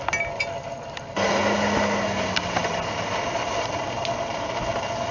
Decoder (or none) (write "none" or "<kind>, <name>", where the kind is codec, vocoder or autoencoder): none